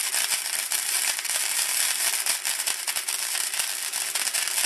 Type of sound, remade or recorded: remade